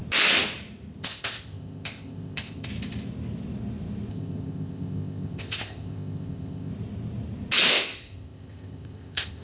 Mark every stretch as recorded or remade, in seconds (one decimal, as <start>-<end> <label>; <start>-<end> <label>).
0.0-1.0 recorded; 1.0-2.7 remade; 2.7-4.1 recorded; 4.1-6.7 remade; 6.7-7.7 recorded; 7.7-9.4 remade